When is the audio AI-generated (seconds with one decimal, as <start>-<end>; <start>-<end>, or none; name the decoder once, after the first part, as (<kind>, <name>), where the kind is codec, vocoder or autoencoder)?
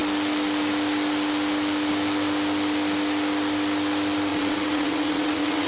4.3-5.7 (vocoder, WaveNeXt)